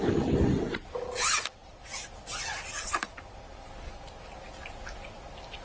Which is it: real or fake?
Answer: real